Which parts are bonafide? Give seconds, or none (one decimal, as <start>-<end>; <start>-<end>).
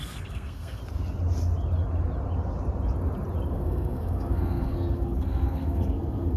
0.8-3.5